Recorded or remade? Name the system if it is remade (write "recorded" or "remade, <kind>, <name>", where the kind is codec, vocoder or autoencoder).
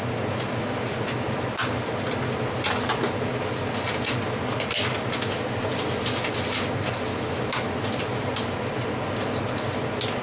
recorded